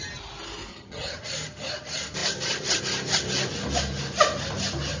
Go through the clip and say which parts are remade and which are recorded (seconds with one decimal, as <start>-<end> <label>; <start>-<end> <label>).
0.0-0.7 recorded; 0.7-1.2 remade; 1.2-5.0 recorded